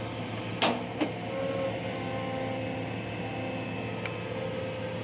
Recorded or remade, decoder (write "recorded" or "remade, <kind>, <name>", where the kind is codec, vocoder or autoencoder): recorded